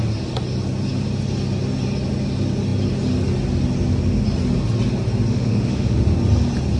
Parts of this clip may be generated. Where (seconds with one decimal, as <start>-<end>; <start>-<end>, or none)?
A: 5.3-6.0